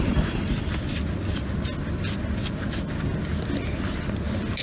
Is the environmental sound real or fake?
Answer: real